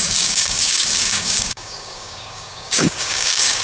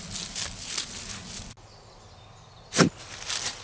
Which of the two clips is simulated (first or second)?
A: first